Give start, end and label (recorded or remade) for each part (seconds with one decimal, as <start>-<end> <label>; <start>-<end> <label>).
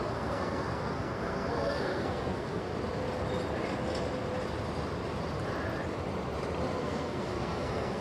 0.0-2.7 remade; 2.7-6.8 recorded; 6.8-8.0 remade